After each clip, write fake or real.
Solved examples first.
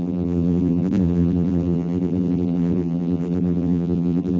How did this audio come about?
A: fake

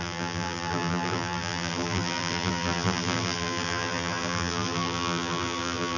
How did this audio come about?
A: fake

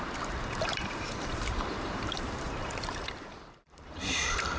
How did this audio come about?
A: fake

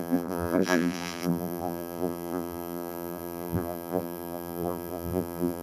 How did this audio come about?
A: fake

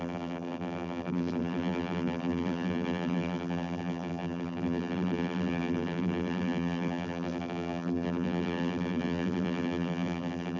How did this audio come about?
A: fake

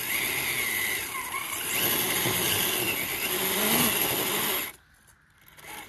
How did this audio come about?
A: real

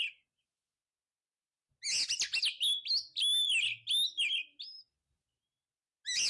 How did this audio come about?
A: real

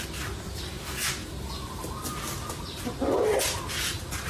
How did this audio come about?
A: real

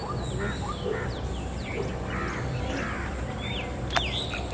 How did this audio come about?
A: fake